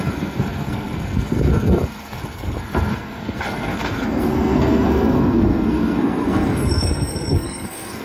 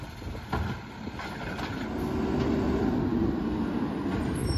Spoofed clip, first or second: first